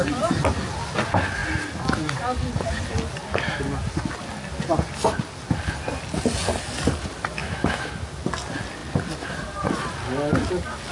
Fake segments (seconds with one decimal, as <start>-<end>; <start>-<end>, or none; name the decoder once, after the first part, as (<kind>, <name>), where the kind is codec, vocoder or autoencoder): 7.4-7.9 (autoencoder, DAC-VAE)